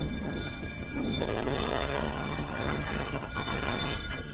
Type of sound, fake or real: fake